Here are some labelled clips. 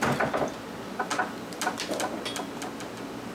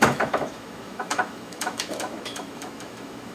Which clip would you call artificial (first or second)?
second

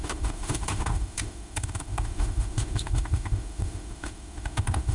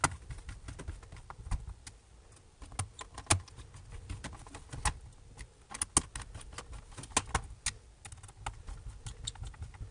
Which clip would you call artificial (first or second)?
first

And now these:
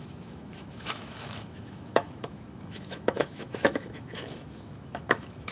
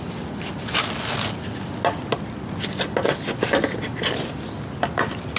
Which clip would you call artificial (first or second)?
first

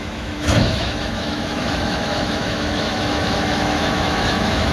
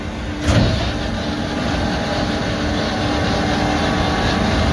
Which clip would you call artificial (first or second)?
first